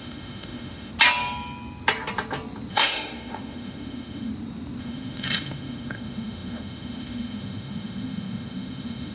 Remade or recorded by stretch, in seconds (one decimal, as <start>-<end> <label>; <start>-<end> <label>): 0.0-0.9 remade; 0.9-2.7 recorded; 2.7-4.3 remade; 4.3-4.8 recorded; 4.8-9.1 remade